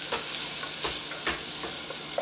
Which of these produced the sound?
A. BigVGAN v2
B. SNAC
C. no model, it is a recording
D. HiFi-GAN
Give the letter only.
C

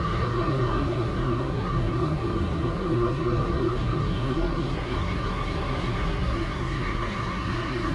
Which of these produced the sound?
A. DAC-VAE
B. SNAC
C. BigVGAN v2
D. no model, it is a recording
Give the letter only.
B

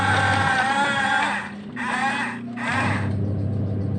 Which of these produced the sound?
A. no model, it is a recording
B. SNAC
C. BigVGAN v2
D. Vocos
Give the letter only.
A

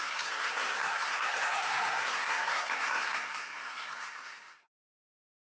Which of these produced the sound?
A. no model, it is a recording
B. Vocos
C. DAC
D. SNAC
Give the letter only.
D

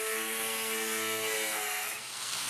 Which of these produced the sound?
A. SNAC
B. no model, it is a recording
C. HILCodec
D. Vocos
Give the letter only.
A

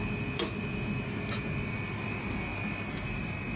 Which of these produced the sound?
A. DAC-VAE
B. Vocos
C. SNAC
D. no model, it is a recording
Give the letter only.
D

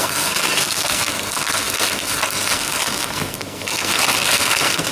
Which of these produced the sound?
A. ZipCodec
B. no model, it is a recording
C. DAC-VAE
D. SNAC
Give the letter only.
D